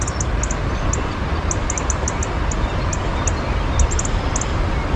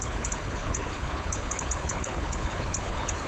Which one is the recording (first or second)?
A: first